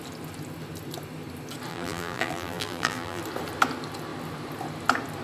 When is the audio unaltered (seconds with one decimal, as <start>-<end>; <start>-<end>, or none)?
0.0-1.7; 3.2-5.2